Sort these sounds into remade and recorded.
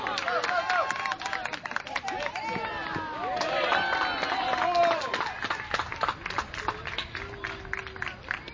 recorded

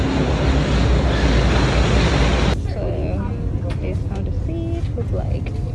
recorded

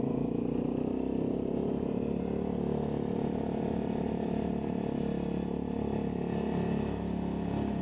recorded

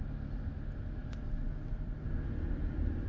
recorded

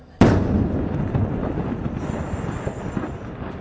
remade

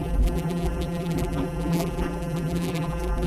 remade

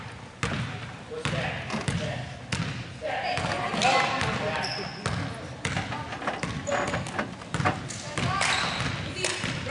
recorded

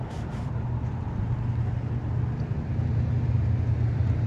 remade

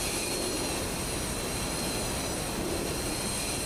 recorded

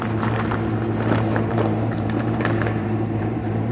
remade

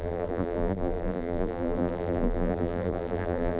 remade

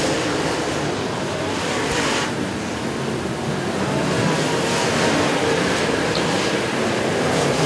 remade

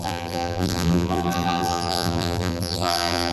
remade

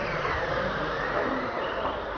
remade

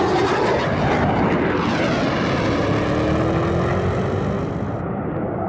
recorded